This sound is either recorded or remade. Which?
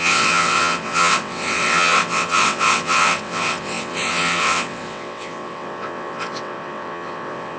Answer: remade